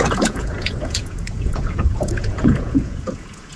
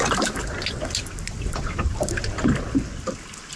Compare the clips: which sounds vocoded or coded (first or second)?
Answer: first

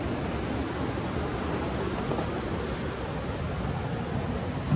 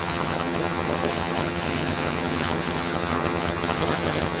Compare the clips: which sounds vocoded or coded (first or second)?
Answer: second